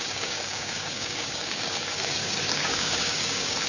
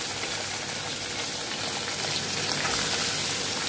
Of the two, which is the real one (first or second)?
second